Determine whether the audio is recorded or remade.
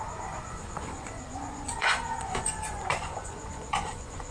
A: remade